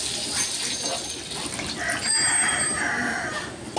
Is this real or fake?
real